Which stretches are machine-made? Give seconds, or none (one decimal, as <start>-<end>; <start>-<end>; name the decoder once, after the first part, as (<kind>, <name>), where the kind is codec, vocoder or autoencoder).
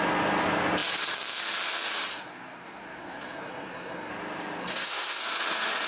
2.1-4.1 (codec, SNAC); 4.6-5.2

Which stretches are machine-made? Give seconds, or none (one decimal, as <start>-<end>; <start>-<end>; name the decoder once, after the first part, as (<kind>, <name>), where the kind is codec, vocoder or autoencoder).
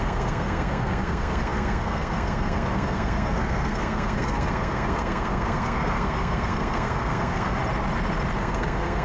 0.0-7.6 (codec, SNAC); 8.4-9.0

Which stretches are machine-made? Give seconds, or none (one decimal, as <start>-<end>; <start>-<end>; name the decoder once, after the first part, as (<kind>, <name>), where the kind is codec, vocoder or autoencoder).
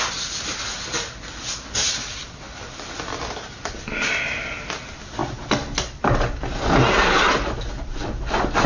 none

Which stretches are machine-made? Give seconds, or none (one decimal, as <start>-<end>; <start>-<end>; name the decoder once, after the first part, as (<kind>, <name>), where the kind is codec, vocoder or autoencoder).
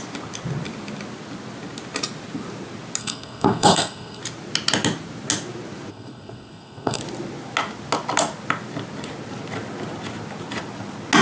3.0-4.2 (codec, SNAC); 5.9-7.0